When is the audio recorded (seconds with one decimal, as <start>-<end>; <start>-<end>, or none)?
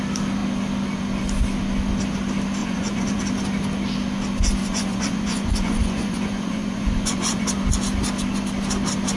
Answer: 0.0-2.6; 3.2-4.6; 7.5-9.2